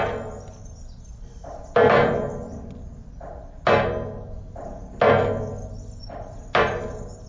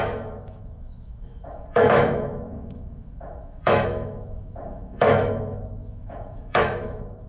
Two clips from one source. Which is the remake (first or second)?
second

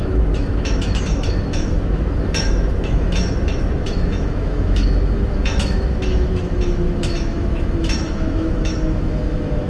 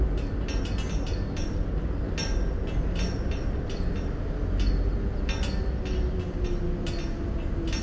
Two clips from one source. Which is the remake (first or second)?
first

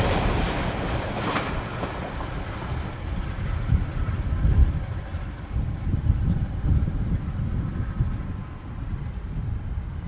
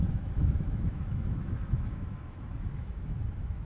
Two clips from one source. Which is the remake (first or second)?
second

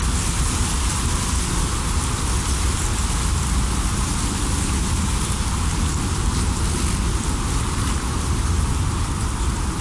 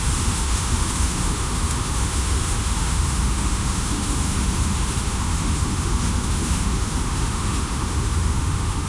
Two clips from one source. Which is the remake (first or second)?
second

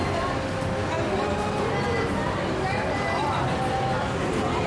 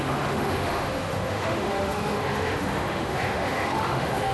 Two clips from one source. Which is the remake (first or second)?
second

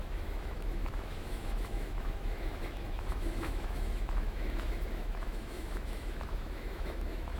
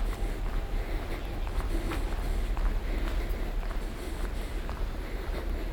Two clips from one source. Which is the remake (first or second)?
first